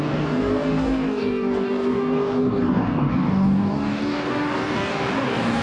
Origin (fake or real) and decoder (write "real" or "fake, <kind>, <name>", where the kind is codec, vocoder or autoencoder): fake, codec, DAC